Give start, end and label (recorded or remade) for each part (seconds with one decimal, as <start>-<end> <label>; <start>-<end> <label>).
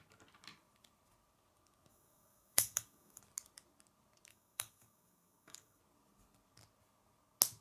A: 0.0-1.9 recorded; 1.9-3.2 remade; 3.2-4.3 recorded; 4.3-5.8 remade; 5.8-7.6 recorded